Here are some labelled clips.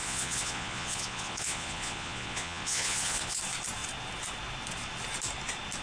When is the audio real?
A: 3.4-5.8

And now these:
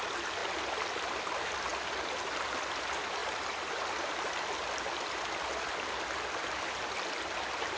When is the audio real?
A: 0.0-7.8

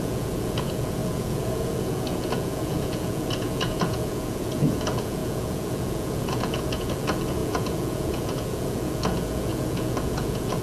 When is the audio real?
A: none

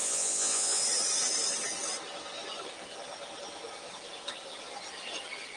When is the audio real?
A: 0.8-5.6

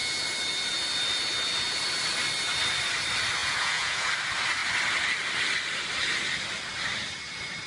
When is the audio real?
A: 0.0-3.4; 4.1-7.7